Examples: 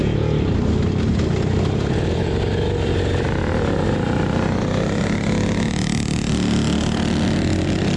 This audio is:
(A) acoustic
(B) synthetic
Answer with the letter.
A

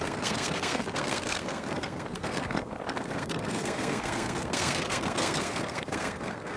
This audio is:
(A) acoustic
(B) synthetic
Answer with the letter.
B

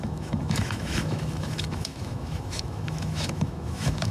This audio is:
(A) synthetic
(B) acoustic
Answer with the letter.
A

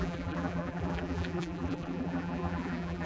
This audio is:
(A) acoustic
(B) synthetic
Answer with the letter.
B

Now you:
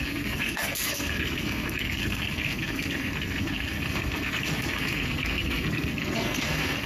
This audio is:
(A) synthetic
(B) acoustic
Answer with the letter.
A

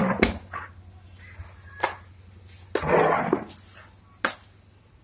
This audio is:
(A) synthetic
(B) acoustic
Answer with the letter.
B